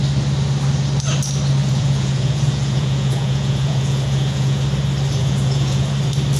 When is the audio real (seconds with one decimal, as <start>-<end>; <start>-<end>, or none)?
0.0-1.6; 4.6-5.2; 5.9-6.4